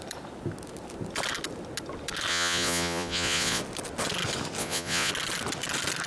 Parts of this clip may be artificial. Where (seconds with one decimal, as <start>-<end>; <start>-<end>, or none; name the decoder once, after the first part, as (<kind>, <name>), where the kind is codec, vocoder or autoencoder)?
2.3-3.6 (vocoder, Vocos); 4.6-5.1